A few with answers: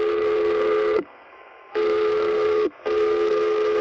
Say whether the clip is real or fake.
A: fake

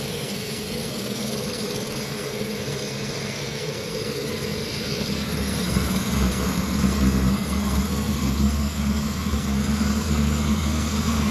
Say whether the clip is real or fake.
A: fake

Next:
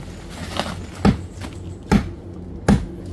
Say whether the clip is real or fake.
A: real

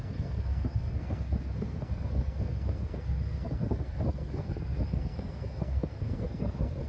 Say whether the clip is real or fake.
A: fake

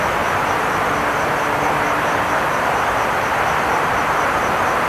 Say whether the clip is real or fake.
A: real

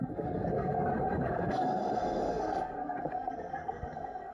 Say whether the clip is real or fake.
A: fake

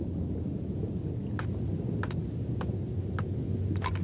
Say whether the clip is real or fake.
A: real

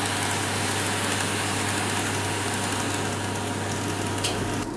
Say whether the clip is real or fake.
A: real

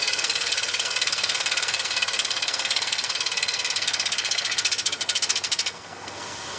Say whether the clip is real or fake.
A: fake